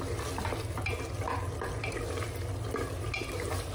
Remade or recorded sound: recorded